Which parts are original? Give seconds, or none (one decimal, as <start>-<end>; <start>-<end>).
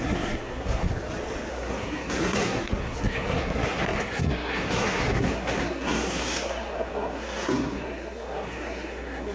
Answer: 0.9-1.5